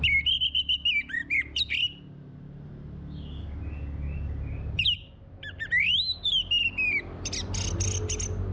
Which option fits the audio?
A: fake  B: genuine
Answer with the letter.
B